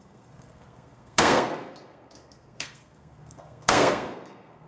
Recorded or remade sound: remade